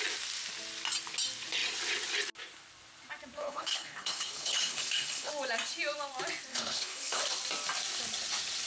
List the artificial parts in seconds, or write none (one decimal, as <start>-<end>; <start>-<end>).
3.4-5.3; 6.5-7.2